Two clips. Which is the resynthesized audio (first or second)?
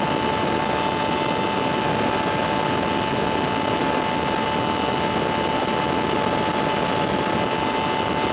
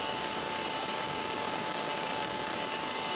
second